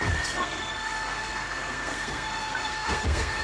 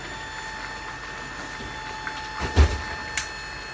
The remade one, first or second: first